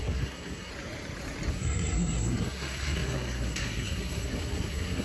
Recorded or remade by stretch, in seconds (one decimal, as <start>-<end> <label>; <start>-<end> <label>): 0.0-0.7 remade; 0.7-1.5 recorded; 1.5-5.0 remade